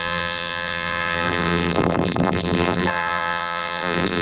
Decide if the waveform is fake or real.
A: fake